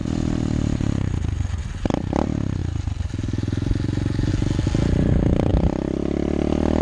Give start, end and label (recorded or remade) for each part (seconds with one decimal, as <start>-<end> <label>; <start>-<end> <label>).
0.0-6.8 recorded